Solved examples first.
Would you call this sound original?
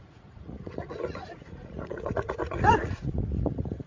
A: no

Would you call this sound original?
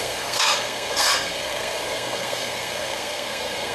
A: no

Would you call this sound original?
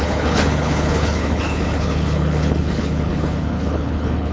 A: no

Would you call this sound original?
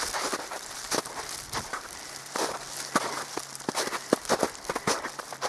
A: no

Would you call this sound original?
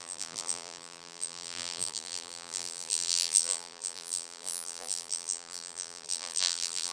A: no